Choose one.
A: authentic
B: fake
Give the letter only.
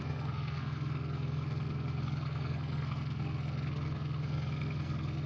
B